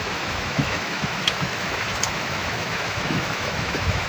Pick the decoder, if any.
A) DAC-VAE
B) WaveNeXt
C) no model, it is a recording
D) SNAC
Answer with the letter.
A